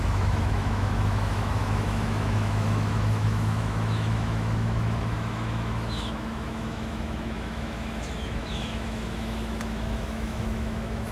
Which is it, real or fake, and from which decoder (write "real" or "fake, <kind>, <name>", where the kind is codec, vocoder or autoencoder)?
fake, autoencoder, DAC-VAE